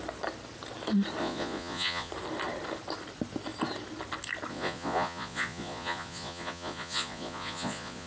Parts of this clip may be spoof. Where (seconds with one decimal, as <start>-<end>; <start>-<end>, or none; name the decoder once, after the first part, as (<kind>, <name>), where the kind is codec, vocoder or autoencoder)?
1.2-2.1 (vocoder, Vocos); 4.5-8.1